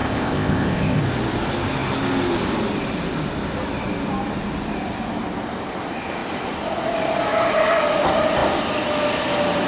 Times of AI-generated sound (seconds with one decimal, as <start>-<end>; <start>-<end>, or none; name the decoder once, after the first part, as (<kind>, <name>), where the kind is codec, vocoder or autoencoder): 0.0-1.0 (codec, ZipCodec)